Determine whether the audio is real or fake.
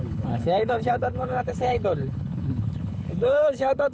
fake